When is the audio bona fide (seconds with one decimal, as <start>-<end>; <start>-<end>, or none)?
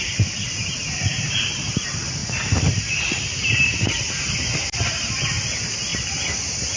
0.0-6.8